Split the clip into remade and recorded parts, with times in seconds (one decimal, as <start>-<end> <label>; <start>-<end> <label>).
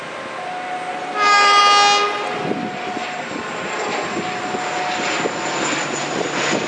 0.0-0.9 recorded; 0.9-1.6 remade; 1.6-6.7 recorded